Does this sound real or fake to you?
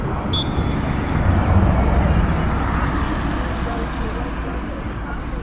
real